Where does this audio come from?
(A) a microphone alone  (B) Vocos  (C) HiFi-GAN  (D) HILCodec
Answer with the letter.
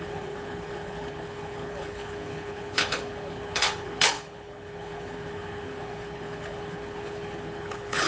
D